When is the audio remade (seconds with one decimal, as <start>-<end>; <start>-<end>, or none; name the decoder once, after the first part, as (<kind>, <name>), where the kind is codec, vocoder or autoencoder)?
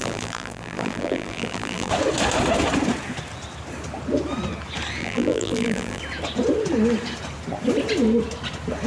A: 0.0-1.9 (vocoder, BigVGAN v2); 5.0-6.0